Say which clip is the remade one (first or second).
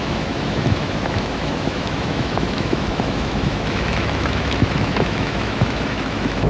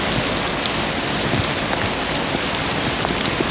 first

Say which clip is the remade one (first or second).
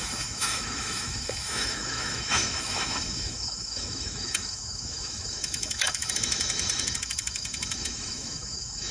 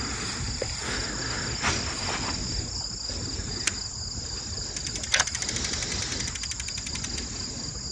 first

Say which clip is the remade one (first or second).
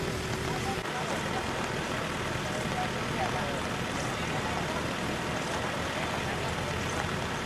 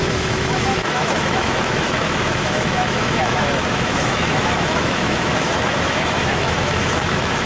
second